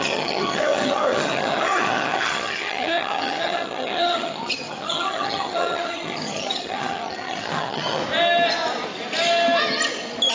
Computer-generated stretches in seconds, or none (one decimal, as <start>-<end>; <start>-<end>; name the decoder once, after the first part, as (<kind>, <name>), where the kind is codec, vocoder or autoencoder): 0.0-8.0 (vocoder, HiFi-GAN)